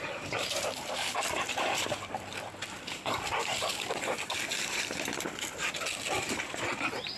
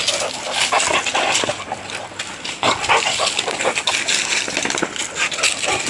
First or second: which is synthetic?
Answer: first